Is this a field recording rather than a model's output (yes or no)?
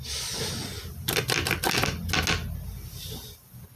yes